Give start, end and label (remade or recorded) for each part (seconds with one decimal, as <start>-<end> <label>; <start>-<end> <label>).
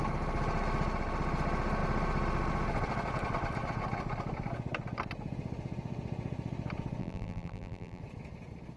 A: 0.0-7.0 recorded; 7.0-8.0 remade; 8.0-8.8 recorded